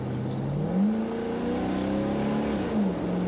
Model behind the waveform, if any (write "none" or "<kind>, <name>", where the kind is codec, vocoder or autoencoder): none